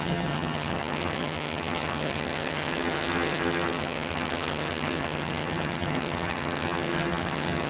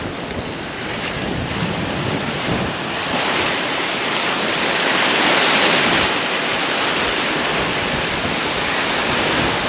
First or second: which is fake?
first